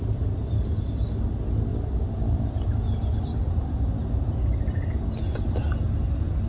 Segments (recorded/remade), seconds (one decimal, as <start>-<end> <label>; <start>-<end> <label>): 0.0-6.5 recorded